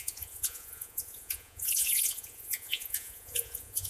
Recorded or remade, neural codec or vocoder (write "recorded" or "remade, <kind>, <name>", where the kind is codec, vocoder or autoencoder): remade, vocoder, Vocos